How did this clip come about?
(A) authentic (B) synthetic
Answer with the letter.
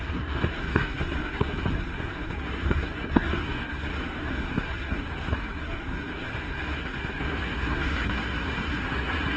B